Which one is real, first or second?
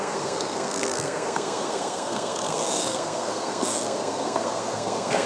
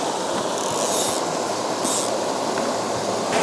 second